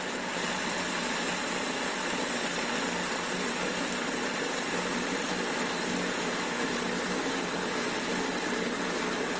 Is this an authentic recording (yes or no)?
yes